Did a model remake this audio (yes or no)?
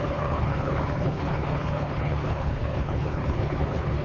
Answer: yes